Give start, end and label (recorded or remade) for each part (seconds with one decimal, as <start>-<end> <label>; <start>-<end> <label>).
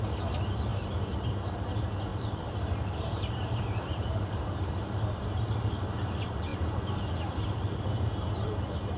0.0-9.0 remade